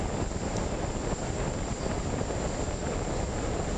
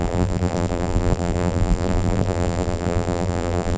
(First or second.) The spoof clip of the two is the second